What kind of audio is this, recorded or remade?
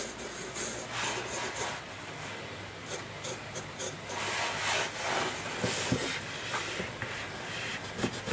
recorded